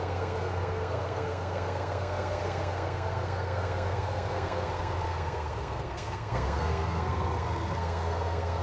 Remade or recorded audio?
remade